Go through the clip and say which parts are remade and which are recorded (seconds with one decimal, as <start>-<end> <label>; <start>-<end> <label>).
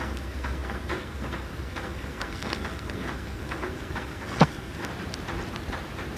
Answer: 0.0-4.9 remade; 4.9-6.2 recorded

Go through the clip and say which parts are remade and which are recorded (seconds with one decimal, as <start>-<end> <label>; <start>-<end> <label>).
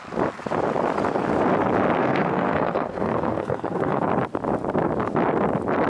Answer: 0.0-2.0 recorded; 2.0-4.1 remade; 4.1-5.9 recorded